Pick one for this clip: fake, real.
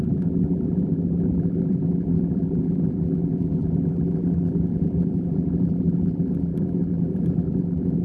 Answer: fake